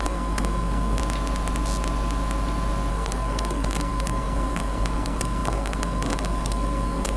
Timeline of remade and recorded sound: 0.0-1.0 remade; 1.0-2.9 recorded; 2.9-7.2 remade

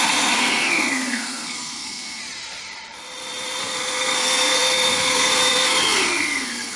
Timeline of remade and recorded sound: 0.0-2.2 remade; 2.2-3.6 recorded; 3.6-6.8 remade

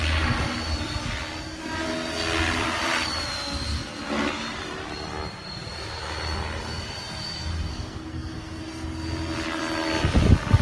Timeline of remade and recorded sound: 0.0-7.7 recorded; 7.7-8.6 remade; 8.6-10.6 recorded